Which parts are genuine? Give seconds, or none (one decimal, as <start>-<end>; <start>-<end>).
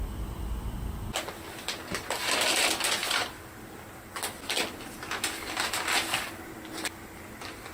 0.0-3.0; 3.7-7.7